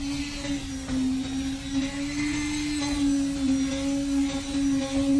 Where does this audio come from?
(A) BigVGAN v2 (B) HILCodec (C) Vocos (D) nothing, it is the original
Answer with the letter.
D